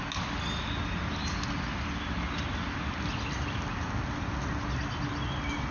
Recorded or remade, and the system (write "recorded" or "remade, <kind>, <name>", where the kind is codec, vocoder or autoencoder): recorded